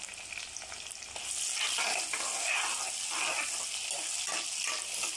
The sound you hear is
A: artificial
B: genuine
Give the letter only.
B